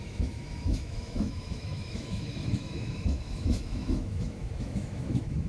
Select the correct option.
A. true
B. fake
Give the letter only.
B